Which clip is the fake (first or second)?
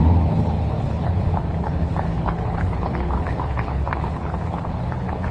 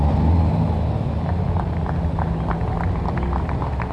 first